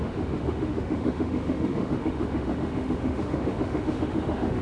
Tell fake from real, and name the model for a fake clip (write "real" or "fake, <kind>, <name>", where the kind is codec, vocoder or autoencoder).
fake, autoencoder, DAC-VAE